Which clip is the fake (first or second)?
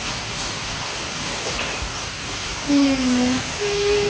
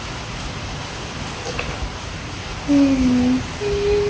first